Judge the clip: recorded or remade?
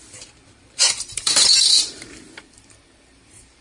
remade